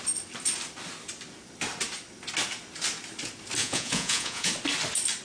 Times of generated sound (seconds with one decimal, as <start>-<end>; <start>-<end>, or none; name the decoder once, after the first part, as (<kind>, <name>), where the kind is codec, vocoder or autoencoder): 3.6-4.5 (vocoder, Vocos)